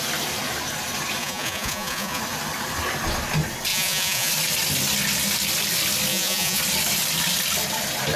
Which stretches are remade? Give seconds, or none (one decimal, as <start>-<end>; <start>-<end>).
1.2-2.2; 3.7-4.3; 6.1-6.6